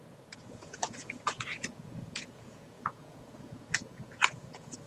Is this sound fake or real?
fake